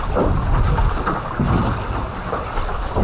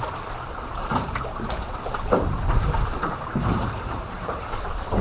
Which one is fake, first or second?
second